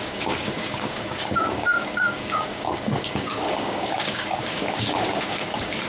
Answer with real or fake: fake